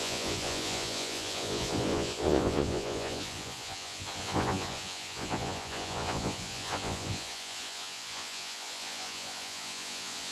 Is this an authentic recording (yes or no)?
no